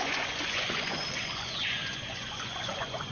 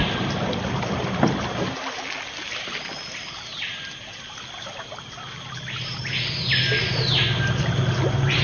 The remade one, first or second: first